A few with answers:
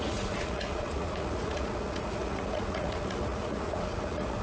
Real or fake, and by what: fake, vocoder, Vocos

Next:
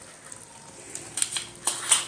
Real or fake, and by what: real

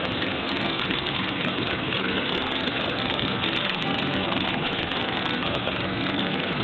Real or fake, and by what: fake, codec, SNAC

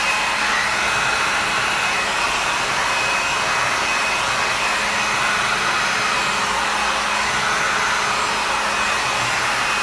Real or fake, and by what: real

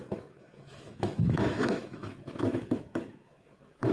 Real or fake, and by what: fake, autoencoder, DAC-VAE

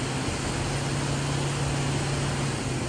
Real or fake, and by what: real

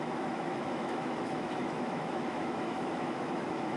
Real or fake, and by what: fake, autoencoder, DAC-VAE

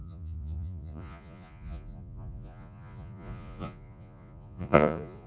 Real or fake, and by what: fake, vocoder, Vocos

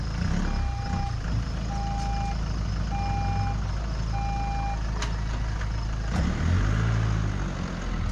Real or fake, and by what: real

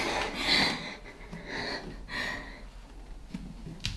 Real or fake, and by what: real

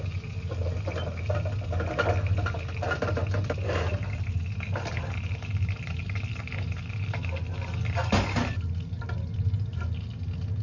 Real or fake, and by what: real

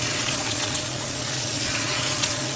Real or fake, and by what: fake, vocoder, Vocos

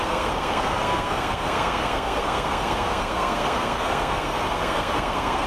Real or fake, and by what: fake, codec, SNAC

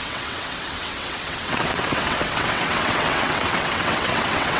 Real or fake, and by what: fake, vocoder, WaveNeXt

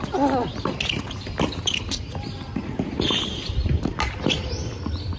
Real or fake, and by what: real